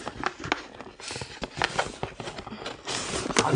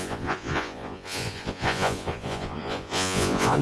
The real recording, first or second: first